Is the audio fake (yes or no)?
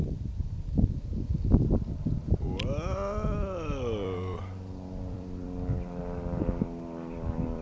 yes